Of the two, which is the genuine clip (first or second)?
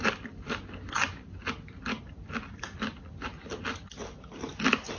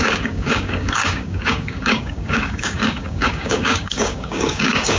first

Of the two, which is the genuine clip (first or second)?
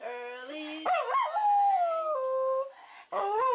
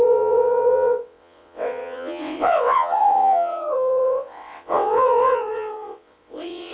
first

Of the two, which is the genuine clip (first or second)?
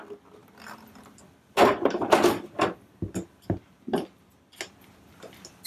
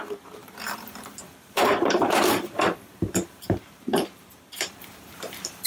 first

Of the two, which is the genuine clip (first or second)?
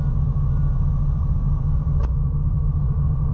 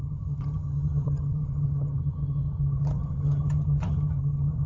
first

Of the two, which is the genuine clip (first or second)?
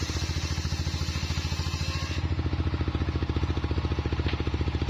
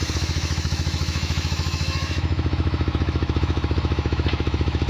first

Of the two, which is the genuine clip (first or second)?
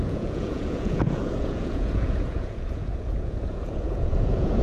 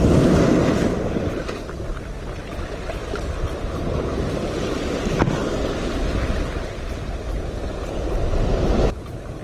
second